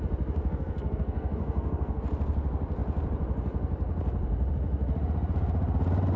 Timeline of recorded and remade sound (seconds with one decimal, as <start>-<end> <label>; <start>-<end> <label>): 0.0-0.4 recorded; 0.4-2.0 remade; 2.0-6.2 recorded